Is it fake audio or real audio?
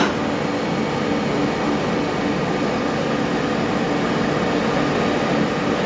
real